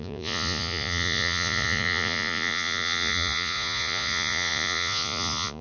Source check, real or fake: fake